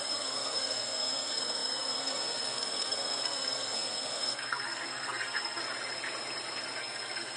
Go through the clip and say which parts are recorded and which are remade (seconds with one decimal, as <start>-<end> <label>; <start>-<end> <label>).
0.0-5.6 remade; 5.6-6.8 recorded; 6.8-7.4 remade